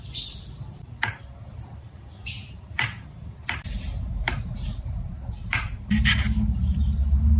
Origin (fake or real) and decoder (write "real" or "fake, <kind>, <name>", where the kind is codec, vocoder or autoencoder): fake, vocoder, BigVGAN v2